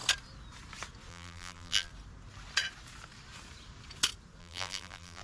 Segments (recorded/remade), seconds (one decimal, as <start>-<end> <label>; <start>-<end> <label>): 0.0-1.1 recorded; 1.1-1.9 remade; 1.9-4.4 recorded; 4.4-5.2 remade